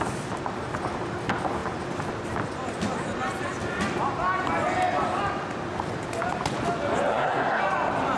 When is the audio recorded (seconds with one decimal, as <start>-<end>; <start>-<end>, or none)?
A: 0.0-7.1; 7.6-8.2